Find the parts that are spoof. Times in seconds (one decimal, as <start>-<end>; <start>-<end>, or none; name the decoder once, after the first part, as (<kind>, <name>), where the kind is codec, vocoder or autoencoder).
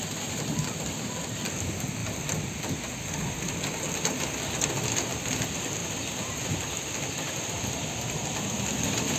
none